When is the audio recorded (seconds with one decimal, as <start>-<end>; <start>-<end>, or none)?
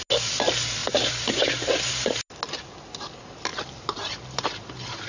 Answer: 0.0-0.8; 1.9-3.5